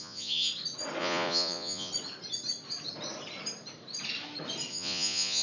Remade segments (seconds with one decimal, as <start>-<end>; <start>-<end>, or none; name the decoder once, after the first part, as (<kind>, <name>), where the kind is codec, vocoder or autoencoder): 0.0-0.5 (vocoder, Vocos); 1.0-1.9; 4.7-5.4